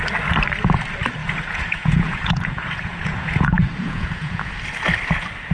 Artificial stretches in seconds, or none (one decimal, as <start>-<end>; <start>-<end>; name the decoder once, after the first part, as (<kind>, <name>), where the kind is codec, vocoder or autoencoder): 1.2-4.5 (vocoder, Vocos)